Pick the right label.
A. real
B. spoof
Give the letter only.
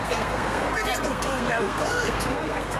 B